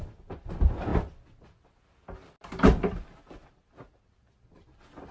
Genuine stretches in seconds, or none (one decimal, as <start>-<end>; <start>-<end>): 0.0-5.1